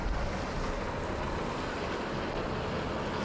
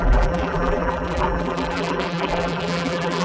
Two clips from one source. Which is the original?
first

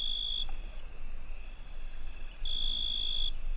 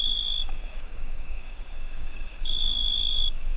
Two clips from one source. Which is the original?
first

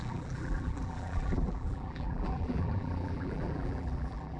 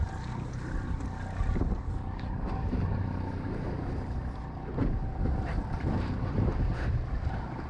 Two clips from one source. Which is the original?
second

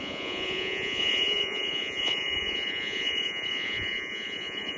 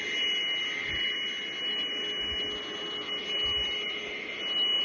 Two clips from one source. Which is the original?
second